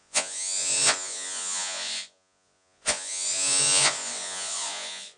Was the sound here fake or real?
fake